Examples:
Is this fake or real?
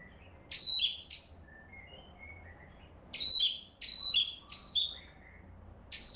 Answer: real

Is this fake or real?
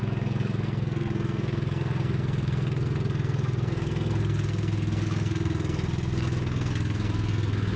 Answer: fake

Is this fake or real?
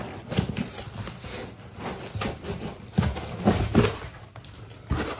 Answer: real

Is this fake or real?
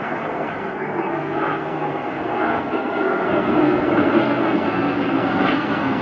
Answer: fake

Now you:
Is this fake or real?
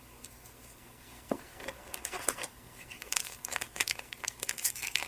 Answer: fake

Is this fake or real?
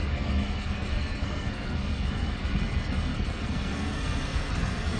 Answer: fake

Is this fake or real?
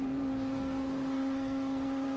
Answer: fake